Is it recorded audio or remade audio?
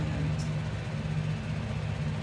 recorded